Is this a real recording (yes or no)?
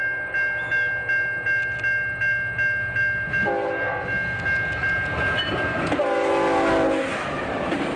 yes